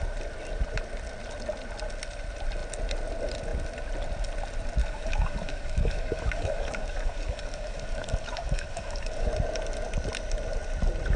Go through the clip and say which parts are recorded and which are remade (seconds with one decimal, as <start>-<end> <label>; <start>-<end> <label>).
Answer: 0.0-4.8 recorded; 4.8-9.3 remade; 9.3-11.2 recorded